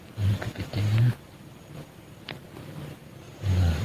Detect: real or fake real